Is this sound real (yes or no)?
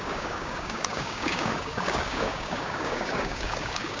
no